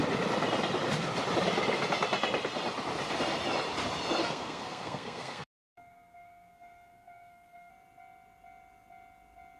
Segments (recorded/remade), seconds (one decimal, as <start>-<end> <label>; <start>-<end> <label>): 0.0-4.2 recorded; 4.2-7.7 remade; 7.7-9.6 recorded